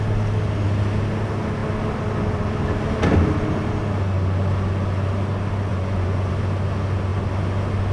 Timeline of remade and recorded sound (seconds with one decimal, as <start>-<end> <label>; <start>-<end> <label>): 0.0-5.7 recorded; 5.7-6.3 remade; 6.3-7.9 recorded